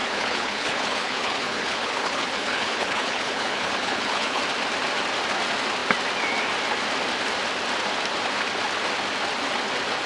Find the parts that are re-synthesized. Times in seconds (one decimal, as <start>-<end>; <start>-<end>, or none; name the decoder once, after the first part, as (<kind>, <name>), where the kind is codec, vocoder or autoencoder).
0.0-4.4 (codec, HILCodec)